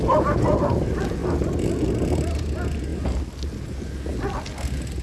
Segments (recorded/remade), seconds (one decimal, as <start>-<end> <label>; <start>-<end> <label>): 0.0-5.0 recorded